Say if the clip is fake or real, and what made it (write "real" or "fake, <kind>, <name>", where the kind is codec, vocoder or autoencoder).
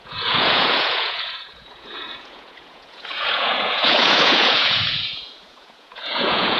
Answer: fake, vocoder, Vocos